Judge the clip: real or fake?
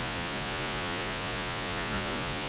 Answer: fake